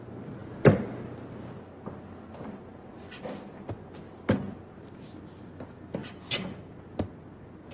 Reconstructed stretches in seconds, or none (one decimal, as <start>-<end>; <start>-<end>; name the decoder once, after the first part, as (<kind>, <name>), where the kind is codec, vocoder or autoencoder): 6.0-6.7 (vocoder, BigVGAN v2)